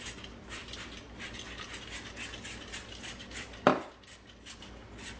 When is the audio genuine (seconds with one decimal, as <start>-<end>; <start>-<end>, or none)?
0.0-5.2